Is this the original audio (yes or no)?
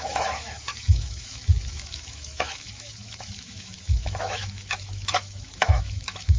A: no